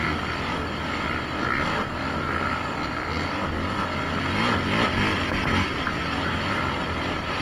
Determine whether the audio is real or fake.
real